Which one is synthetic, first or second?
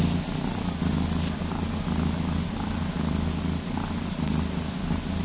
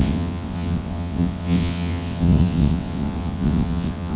second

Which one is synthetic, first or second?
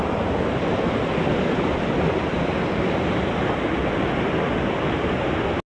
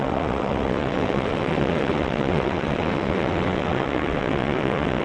second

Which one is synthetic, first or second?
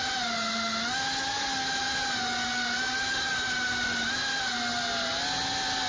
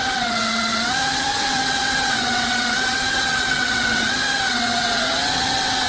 second